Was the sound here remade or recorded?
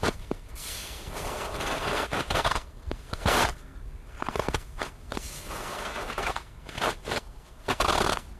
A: remade